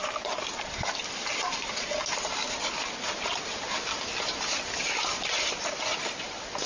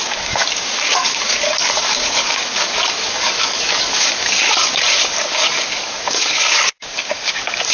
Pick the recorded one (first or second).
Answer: first